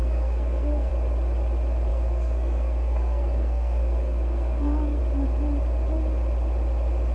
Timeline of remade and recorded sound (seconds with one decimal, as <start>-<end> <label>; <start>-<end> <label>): 0.0-0.9 remade; 0.9-1.9 recorded; 1.9-5.0 remade; 5.0-7.1 recorded